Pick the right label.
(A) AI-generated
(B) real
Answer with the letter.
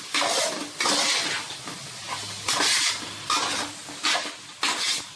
B